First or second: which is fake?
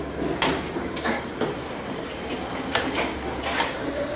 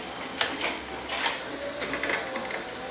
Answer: first